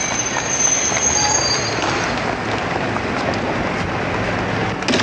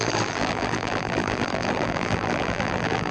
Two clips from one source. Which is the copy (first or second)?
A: second